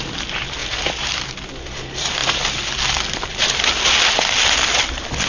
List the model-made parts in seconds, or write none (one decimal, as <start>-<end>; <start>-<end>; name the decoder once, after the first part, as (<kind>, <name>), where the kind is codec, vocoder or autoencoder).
none